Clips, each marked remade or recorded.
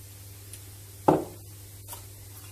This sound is recorded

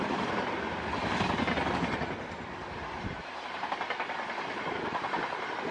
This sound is recorded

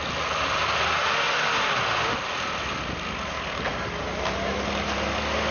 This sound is recorded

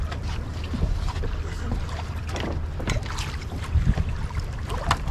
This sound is recorded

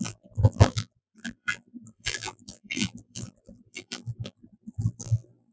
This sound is remade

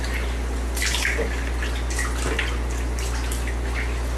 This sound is recorded